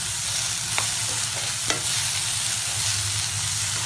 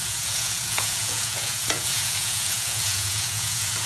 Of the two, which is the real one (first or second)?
first